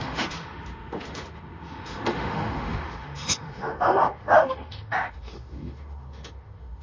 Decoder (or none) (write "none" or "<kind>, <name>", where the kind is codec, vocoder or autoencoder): autoencoder, DAC-VAE